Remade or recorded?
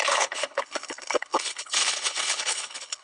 remade